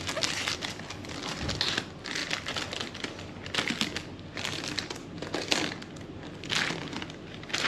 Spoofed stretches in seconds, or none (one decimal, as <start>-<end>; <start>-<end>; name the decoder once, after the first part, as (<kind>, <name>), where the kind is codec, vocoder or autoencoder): none